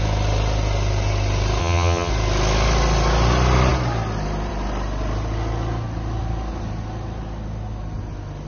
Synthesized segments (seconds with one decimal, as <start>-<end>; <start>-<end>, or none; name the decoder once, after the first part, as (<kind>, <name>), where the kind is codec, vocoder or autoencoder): 1.6-2.1 (vocoder, HiFi-GAN)